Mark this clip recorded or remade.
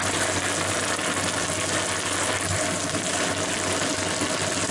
recorded